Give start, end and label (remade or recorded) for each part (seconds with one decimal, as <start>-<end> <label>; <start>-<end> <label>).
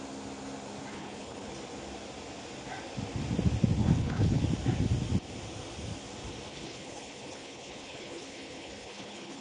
0.0-0.9 recorded; 0.9-1.5 remade; 1.5-3.8 recorded; 3.8-4.4 remade; 4.4-6.5 recorded; 6.5-9.4 remade